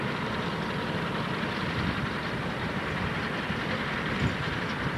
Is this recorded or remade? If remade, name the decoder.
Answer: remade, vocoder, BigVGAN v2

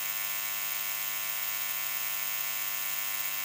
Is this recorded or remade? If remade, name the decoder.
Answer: recorded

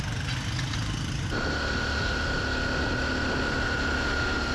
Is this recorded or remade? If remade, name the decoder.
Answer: recorded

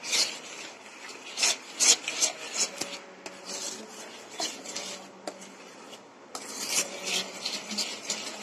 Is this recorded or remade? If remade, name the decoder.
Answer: recorded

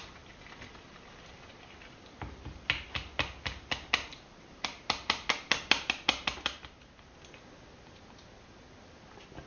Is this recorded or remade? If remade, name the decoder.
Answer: recorded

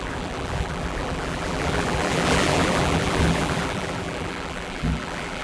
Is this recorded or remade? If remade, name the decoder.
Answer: remade, vocoder, BigVGAN v2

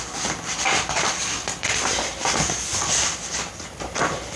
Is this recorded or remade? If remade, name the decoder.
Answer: remade, vocoder, BigVGAN v2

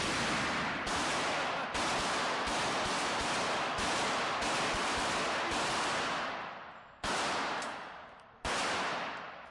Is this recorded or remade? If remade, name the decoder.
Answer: recorded